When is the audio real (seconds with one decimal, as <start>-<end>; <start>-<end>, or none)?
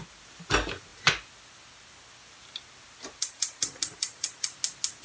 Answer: 0.0-5.0